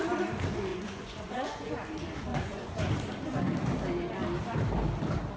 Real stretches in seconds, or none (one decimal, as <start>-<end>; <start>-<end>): 0.0-0.7; 1.7-2.3; 2.9-5.4